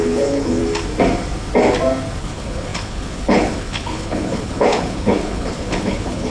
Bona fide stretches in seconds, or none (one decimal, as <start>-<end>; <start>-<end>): 0.6-2.2